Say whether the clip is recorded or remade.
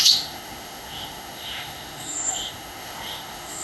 remade